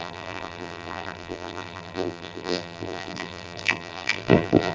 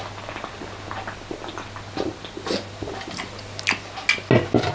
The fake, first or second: first